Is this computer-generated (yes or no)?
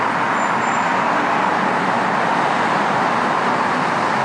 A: no